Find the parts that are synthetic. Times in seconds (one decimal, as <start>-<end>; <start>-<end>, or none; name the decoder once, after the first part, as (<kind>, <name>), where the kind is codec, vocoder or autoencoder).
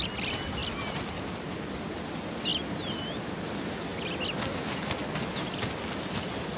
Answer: none